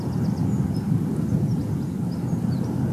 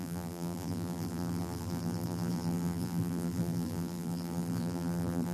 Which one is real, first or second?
first